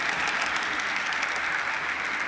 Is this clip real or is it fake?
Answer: real